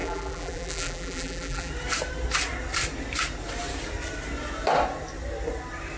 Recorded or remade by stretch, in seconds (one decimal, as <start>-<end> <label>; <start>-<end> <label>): 0.0-1.7 remade; 1.7-6.0 recorded

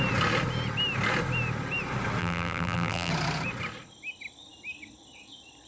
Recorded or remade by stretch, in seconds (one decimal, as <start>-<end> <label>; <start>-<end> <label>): 0.0-2.2 recorded; 2.2-3.1 remade; 3.1-5.7 recorded

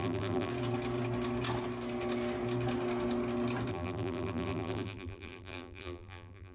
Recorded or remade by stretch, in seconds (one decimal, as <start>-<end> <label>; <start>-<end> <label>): 0.0-0.5 remade; 0.5-3.7 recorded; 3.7-6.5 remade

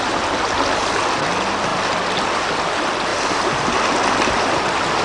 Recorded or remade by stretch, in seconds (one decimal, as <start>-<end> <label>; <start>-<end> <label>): 0.0-3.1 recorded; 3.1-3.7 remade; 3.7-5.0 recorded

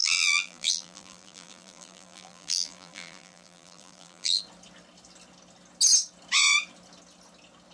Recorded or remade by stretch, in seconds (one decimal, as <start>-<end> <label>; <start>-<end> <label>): 0.0-4.4 remade; 4.4-7.7 recorded

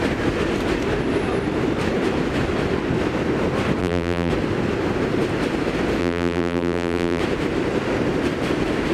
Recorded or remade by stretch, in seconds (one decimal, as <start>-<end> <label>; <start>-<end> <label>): 0.0-3.8 recorded; 3.8-4.3 remade; 4.3-6.0 recorded; 6.0-7.2 remade; 7.2-8.9 recorded

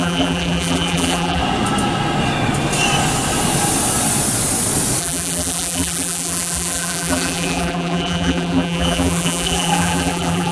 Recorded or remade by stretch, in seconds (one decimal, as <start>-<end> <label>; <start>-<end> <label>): 0.0-1.4 remade; 1.4-5.0 recorded; 5.0-10.5 remade

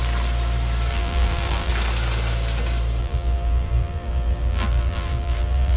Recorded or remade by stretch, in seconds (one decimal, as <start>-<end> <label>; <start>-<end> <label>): 0.0-0.9 recorded; 0.9-1.7 remade; 1.7-3.0 recorded; 3.0-5.8 remade